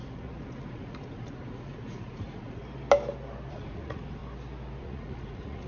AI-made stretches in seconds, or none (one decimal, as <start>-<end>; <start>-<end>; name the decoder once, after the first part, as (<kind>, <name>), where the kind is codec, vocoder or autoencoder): 0.0-2.6 (vocoder, Vocos); 3.5-4.2; 4.8-5.7

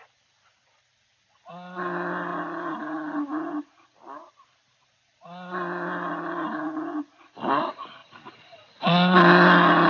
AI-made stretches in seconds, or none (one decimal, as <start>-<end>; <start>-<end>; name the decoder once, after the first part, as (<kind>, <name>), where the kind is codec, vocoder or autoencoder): none

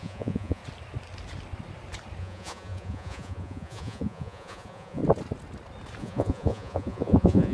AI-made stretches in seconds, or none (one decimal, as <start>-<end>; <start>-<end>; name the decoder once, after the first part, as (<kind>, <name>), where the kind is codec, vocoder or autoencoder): 0.0-0.6 (vocoder, Vocos); 2.2-5.0; 6.0-7.5

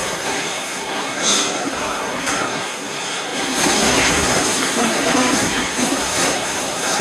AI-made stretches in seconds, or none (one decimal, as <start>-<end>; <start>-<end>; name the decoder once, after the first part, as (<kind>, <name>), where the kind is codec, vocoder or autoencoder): 0.0-7.0 (codec, SNAC)